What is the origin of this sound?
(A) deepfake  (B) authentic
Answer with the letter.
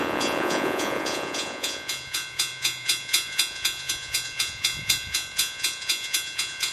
A